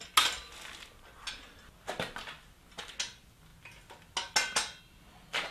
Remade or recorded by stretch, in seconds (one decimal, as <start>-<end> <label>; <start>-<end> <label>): 0.0-5.5 recorded